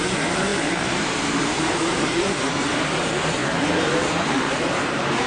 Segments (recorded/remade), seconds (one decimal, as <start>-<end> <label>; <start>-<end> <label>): 0.0-5.3 remade